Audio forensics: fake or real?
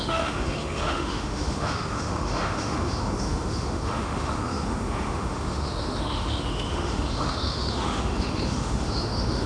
fake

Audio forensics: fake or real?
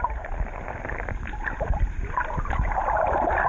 real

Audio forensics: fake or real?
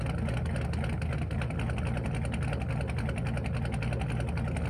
real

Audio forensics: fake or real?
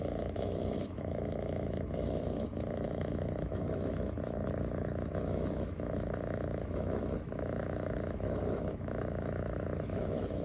fake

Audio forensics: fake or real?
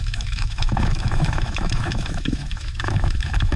fake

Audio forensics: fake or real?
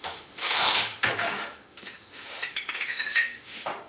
fake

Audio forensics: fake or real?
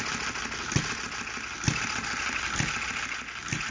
real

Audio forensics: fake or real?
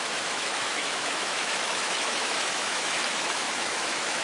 fake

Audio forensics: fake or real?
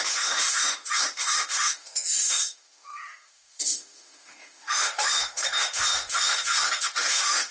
fake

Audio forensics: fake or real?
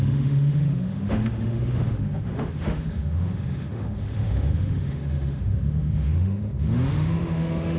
fake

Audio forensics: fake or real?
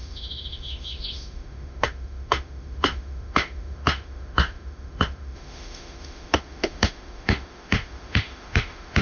fake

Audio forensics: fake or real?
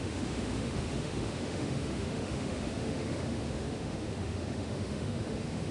fake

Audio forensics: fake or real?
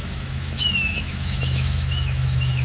fake